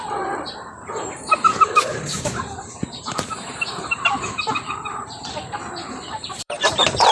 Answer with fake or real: fake